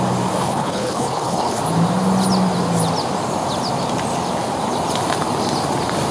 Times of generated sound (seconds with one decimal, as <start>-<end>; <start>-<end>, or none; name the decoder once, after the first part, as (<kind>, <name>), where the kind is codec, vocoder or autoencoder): 0.4-1.6 (codec, HILCodec)